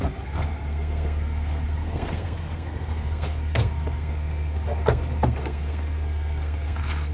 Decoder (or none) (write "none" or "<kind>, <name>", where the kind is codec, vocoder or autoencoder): codec, SNAC